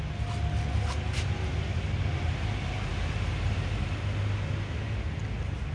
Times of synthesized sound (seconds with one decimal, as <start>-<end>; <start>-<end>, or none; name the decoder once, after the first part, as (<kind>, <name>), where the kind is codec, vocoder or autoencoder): none